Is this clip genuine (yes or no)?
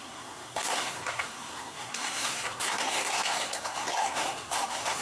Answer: no